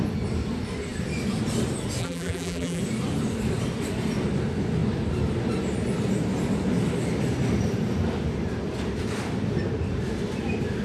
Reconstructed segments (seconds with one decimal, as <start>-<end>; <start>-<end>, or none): 2.0-2.8